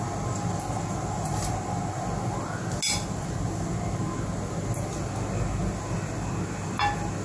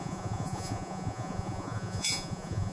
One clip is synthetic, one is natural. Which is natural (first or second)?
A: first